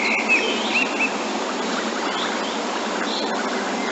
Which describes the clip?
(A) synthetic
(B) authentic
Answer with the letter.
B